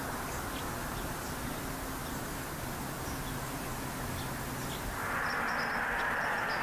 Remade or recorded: recorded